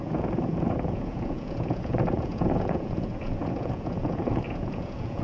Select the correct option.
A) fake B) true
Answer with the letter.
A